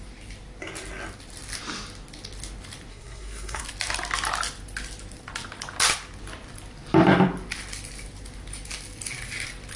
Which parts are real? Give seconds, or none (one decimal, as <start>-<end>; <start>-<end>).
0.0-2.9; 3.6-9.8

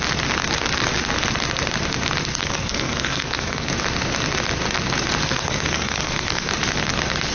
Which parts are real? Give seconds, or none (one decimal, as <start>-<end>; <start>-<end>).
0.0-2.3; 3.7-5.2; 6.5-7.3

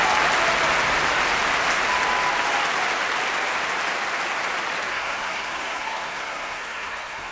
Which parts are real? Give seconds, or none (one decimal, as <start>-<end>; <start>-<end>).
0.0-4.9

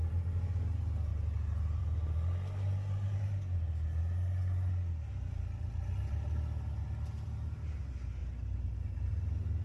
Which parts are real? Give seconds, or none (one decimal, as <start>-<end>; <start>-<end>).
0.0-9.6

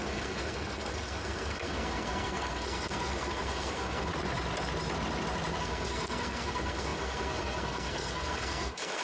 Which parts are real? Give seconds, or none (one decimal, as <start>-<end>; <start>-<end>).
4.1-5.6